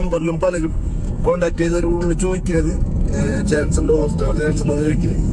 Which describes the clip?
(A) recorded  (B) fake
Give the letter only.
B